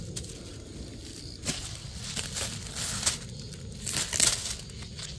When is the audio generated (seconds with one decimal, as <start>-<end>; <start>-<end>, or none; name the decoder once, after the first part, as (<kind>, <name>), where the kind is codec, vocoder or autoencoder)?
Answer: none